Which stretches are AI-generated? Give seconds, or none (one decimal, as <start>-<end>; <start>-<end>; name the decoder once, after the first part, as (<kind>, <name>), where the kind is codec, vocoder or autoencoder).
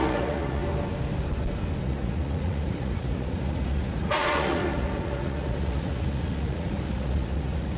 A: 0.0-0.6 (vocoder, Vocos); 1.8-7.8